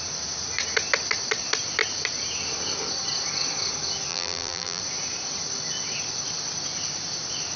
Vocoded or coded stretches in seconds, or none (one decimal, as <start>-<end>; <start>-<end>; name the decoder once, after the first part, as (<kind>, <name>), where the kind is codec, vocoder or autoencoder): 4.1-4.8 (vocoder, BigVGAN v2)